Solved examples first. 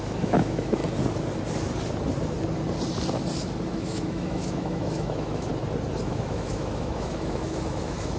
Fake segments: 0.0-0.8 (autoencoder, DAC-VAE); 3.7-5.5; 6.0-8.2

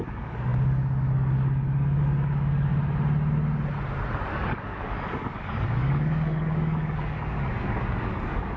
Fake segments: 0.0-2.7 (codec, DAC); 4.3-8.6

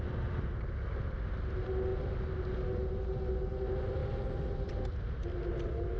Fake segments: none

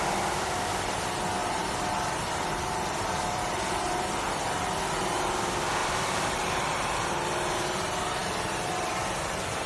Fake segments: 1.4-4.6 (vocoder, BigVGAN v2); 5.8-6.4; 8.2-8.9

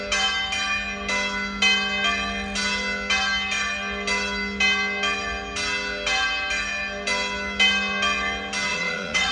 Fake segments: 8.7-9.3 (vocoder, Vocos)